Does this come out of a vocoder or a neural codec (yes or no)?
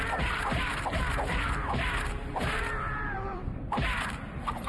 yes